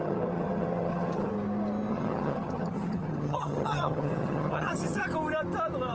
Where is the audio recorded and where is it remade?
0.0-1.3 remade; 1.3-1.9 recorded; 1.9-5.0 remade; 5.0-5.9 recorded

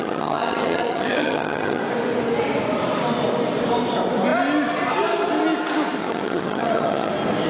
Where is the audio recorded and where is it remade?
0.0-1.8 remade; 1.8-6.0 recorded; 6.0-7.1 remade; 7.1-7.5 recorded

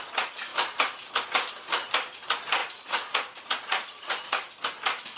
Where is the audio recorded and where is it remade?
0.0-2.6 recorded; 2.6-4.5 remade; 4.5-5.2 recorded